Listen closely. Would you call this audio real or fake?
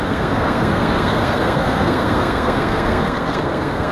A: fake